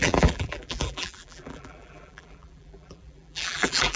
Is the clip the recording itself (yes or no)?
no